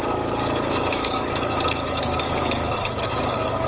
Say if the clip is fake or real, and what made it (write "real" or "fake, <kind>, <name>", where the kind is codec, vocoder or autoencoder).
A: fake, codec, DAC